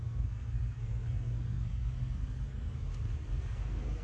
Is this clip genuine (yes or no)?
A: no